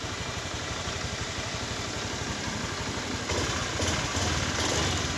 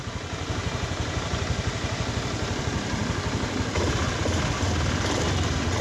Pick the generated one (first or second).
second